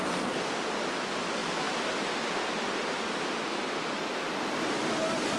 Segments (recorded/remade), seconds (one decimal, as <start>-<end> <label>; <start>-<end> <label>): 0.0-5.4 recorded